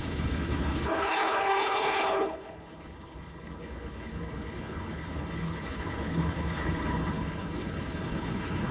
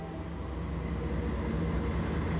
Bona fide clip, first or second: second